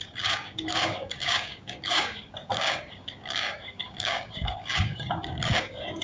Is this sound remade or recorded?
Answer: remade